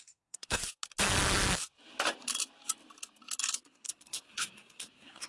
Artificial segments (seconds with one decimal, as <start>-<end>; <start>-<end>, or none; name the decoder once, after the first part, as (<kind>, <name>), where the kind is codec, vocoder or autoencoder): 0.0-0.6 (codec, SNAC); 3.6-5.3